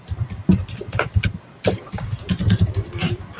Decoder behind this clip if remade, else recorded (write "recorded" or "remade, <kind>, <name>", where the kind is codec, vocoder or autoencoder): remade, vocoder, BigVGAN v2